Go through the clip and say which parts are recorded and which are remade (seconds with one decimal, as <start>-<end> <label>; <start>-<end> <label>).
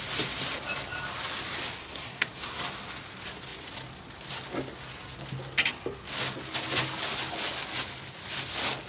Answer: 0.0-1.8 recorded; 1.8-2.6 remade; 2.6-8.9 recorded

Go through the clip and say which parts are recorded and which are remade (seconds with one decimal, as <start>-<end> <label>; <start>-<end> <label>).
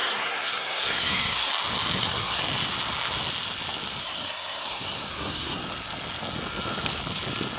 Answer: 0.0-1.5 remade; 1.5-2.0 recorded; 2.0-2.4 remade; 2.4-4.0 recorded; 4.0-5.6 remade; 5.6-7.6 recorded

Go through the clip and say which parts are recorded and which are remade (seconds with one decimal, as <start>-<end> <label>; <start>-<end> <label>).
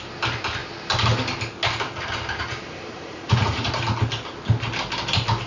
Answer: 0.0-2.9 recorded; 2.9-3.7 remade; 3.7-5.5 recorded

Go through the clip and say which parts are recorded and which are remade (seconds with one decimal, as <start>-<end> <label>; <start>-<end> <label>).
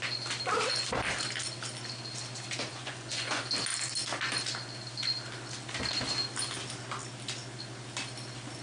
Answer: 0.0-2.7 recorded; 2.7-3.4 remade; 3.4-8.6 recorded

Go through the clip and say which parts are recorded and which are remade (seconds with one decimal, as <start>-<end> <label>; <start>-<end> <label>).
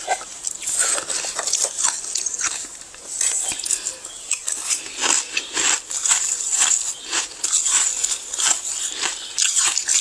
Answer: 0.0-2.6 recorded; 2.6-3.4 remade; 3.4-10.0 recorded